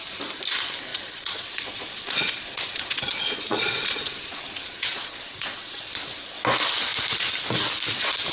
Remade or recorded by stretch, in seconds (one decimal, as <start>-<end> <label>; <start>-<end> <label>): 0.0-0.9 recorded; 0.9-5.9 remade; 5.9-8.3 recorded